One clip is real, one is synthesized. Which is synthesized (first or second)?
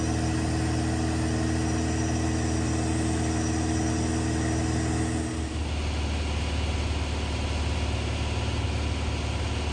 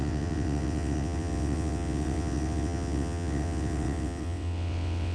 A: second